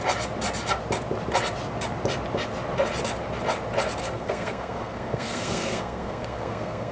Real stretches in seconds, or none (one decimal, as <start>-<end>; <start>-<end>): 0.0-4.0